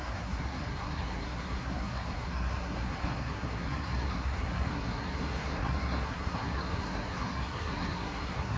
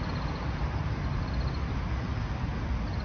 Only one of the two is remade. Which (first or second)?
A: first